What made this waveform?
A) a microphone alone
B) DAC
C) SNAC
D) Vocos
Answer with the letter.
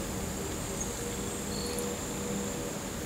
A